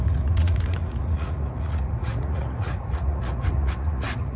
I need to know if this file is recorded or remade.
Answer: remade